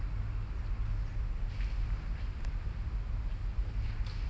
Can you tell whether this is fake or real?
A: real